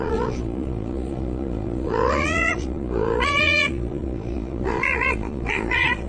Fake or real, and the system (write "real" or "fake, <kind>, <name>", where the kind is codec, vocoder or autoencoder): fake, vocoder, Vocos